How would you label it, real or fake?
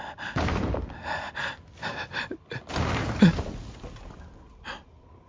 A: fake